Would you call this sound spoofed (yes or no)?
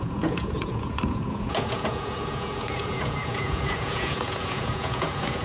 yes